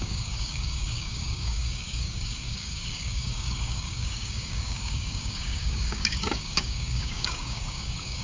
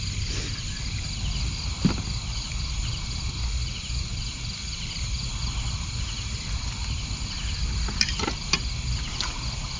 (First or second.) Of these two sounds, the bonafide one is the second